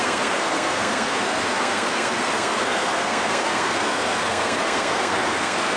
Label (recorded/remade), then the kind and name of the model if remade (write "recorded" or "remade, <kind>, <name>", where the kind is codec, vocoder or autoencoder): remade, codec, SNAC